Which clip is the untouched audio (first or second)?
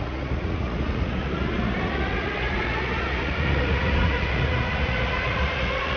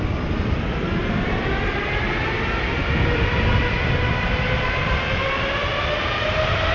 second